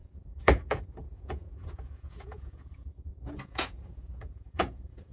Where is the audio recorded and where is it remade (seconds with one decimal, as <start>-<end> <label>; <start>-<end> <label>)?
0.0-5.1 remade